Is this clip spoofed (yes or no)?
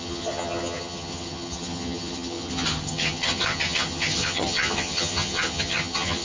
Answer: yes